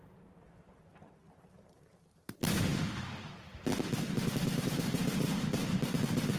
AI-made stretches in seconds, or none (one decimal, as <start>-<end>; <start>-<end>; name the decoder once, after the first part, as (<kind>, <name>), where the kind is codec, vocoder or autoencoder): 0.0-2.7 (vocoder, BigVGAN v2); 3.9-6.4